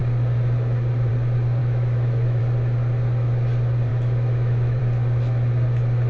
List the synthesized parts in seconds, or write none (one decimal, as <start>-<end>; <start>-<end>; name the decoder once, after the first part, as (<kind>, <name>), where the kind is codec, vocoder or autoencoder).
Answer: 1.6-2.4 (autoencoder, DAC-VAE); 3.9-4.8